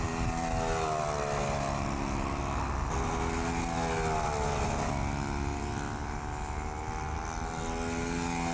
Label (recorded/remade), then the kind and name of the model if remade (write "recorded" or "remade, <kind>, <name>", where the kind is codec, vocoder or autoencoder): recorded